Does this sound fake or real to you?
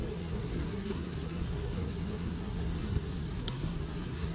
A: fake